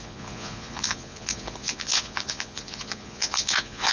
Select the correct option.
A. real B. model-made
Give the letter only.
B